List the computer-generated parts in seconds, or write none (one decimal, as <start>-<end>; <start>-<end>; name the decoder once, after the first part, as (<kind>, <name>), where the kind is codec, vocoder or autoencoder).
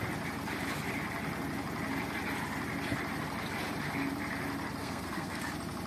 4.8-5.4 (codec, SNAC)